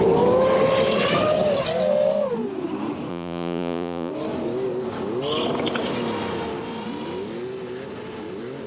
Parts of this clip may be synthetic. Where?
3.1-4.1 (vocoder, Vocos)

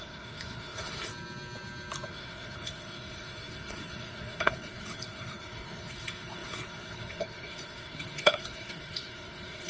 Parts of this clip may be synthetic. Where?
0.0-1.1 (codec, HILCodec); 2.1-9.7

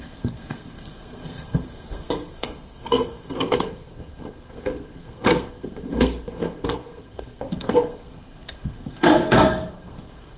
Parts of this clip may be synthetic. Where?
0.0-10.4 (codec, SNAC)

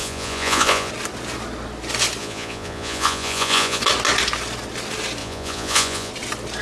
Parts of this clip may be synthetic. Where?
0.0-0.9 (vocoder, Vocos); 2.2-3.8; 5.2-6.1

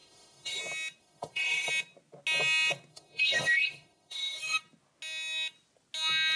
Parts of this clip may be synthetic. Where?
0.0-0.6 (autoencoder, DAC-VAE); 1.0-1.7; 2.9-4.6